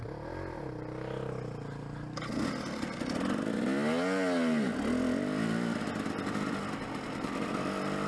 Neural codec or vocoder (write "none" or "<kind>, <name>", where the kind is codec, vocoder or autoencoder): none